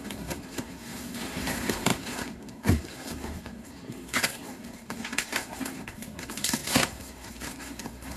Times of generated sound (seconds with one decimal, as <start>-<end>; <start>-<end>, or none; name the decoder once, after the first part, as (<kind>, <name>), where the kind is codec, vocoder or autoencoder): 0.0-8.2 (codec, SNAC)